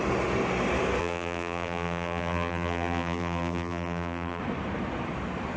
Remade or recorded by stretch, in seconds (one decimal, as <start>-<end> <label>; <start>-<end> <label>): 0.0-1.0 recorded; 1.0-4.4 remade; 4.4-5.6 recorded